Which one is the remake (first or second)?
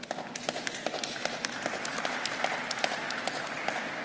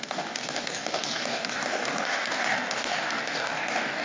second